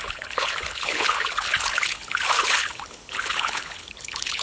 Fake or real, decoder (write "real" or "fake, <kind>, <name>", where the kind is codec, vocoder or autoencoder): fake, codec, HILCodec